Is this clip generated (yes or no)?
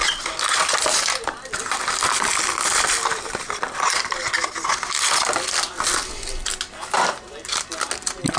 no